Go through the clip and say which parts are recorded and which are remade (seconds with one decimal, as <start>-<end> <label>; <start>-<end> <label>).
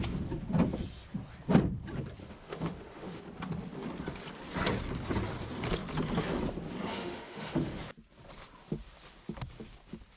0.0-2.2 recorded; 2.2-3.2 remade; 3.2-6.9 recorded; 6.9-7.8 remade; 7.8-10.2 recorded